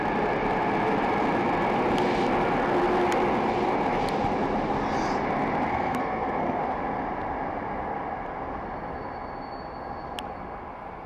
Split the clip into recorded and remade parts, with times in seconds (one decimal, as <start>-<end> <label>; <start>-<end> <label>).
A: 0.0-5.7 recorded; 5.7-6.6 remade; 6.6-11.1 recorded